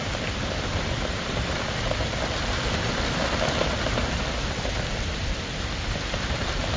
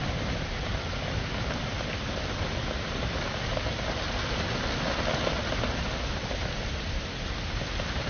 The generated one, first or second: first